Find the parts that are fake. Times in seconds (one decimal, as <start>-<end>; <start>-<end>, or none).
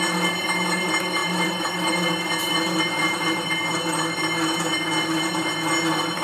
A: 1.2-1.9